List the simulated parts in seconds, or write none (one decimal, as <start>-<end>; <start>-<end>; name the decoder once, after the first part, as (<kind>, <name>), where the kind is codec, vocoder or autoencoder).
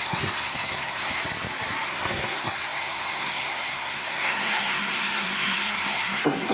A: 0.0-1.2 (codec, SNAC); 1.9-6.5